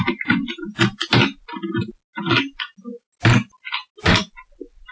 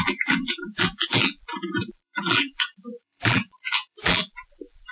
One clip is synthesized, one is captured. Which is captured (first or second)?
first